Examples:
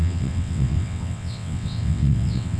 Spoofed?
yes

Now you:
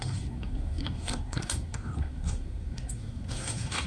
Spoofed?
yes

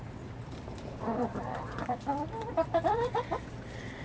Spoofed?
yes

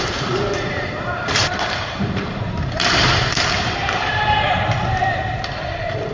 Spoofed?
yes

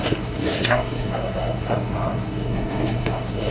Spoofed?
yes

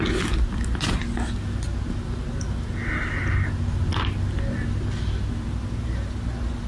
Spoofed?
no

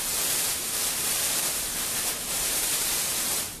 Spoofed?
yes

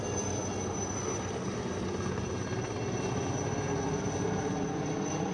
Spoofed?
no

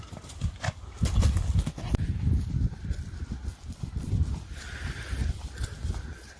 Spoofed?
no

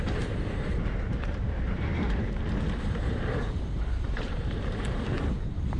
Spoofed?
yes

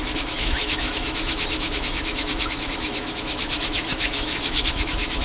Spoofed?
yes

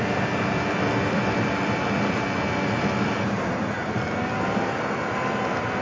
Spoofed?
yes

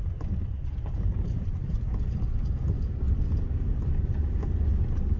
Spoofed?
no